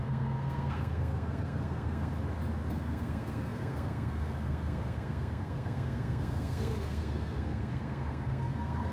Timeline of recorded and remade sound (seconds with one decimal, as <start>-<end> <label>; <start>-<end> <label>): 0.0-2.1 remade; 2.1-2.7 recorded; 2.7-8.9 remade